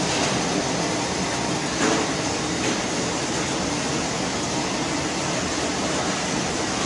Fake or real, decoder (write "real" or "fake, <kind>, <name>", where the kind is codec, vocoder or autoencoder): real